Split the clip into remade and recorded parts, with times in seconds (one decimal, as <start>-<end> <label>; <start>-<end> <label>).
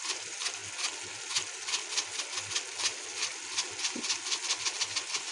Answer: 0.0-0.6 remade; 0.6-3.8 recorded; 3.8-5.3 remade